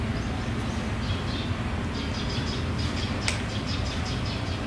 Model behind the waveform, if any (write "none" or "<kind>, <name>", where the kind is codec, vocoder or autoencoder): none